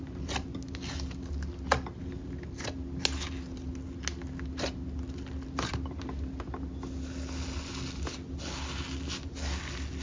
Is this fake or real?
real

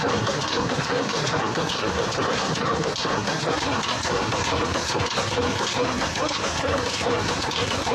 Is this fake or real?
fake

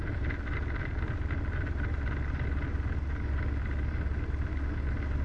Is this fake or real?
real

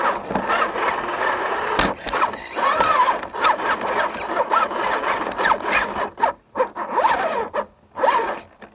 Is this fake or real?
real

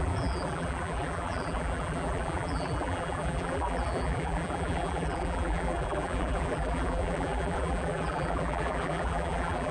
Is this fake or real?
fake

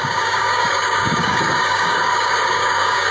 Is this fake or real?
fake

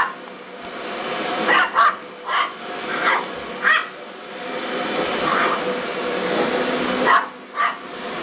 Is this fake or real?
real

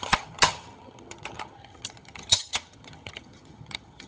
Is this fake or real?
fake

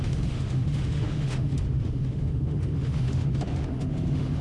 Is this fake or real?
fake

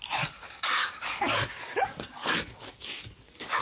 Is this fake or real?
fake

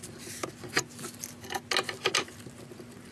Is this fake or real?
real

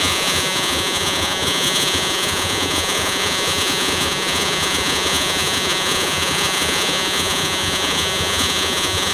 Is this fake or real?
fake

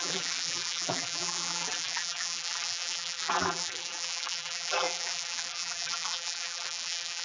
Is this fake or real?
fake